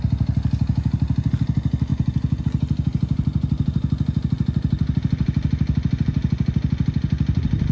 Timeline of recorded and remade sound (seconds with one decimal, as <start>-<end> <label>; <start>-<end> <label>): 0.0-7.7 recorded